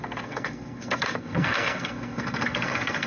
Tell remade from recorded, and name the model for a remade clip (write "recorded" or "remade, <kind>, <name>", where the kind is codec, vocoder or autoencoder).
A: remade, codec, SNAC